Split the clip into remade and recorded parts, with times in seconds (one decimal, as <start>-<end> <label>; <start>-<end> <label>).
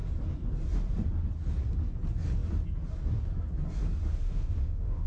0.0-4.1 recorded; 4.1-5.1 remade